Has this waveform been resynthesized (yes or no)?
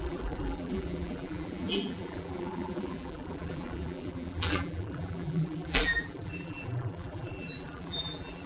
yes